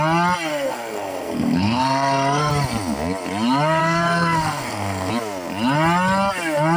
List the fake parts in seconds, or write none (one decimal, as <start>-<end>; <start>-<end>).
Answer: 0.5-2.5; 3.8-5.1